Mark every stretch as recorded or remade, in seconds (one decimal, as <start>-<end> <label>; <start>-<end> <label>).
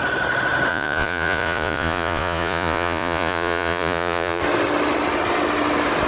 0.0-0.7 recorded; 0.7-4.4 remade; 4.4-6.1 recorded